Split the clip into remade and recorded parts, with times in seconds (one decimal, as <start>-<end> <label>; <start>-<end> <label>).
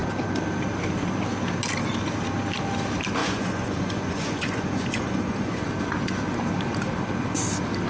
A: 0.0-3.2 recorded; 3.2-5.6 remade; 5.6-7.9 recorded